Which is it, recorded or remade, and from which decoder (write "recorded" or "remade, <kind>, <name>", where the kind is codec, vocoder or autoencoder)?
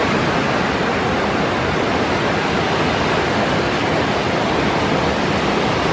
recorded